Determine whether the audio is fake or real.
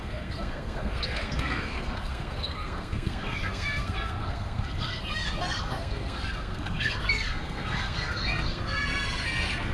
fake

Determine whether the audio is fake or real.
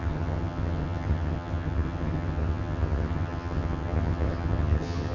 fake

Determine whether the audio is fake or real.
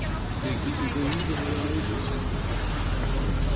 real